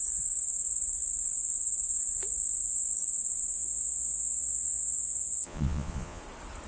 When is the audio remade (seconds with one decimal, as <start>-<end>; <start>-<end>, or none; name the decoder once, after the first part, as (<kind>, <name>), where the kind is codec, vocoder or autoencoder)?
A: 3.6-6.2 (vocoder, Vocos)